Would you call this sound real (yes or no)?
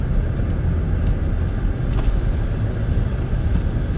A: yes